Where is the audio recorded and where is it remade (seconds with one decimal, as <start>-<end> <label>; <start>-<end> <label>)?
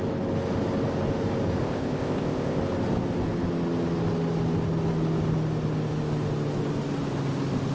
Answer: 0.0-1.6 recorded; 1.6-2.6 remade; 2.6-7.7 recorded